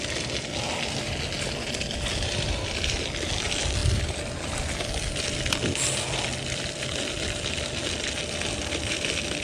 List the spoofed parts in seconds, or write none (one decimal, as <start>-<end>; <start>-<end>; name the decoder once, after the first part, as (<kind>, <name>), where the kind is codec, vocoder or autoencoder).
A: none